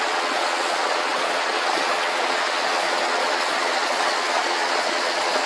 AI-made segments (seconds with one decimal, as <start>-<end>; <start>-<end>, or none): 0.0-5.5

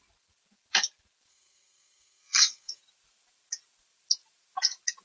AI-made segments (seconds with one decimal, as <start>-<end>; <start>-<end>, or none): 1.3-2.8

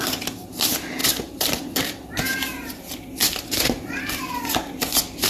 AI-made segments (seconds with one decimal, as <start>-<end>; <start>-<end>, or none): 1.0-4.2

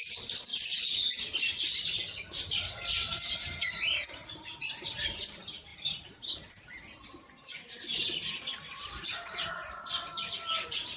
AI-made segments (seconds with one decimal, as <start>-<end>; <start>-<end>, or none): 5.7-9.5